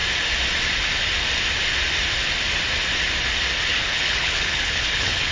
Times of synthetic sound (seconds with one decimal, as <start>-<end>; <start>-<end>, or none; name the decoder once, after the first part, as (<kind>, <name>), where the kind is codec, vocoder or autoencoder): 3.7-5.3 (codec, HILCodec)